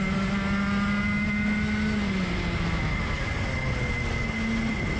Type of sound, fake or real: real